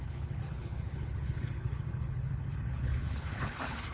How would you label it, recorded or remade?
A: remade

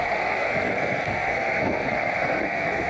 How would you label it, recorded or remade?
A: remade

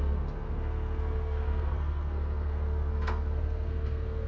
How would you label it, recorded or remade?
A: remade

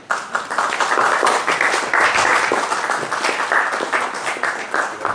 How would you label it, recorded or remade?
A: recorded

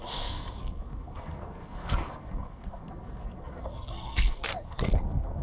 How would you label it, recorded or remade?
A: remade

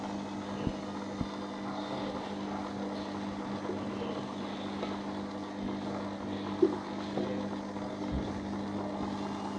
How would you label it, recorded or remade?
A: recorded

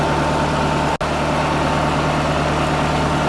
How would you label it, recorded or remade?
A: recorded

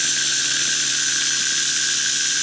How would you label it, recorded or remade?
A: recorded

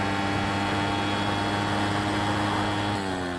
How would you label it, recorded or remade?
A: recorded